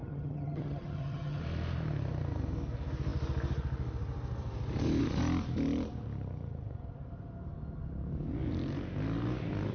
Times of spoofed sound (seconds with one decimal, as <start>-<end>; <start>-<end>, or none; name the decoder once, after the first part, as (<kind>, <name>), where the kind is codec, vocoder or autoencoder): 0.0-1.4 (vocoder, HiFi-GAN)